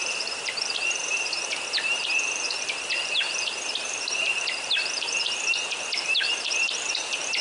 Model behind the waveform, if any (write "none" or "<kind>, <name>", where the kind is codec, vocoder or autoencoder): vocoder, BigVGAN v2